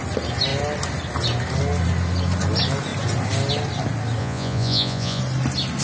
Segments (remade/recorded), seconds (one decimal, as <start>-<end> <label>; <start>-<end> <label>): 0.0-4.2 recorded; 4.2-5.2 remade; 5.2-5.8 recorded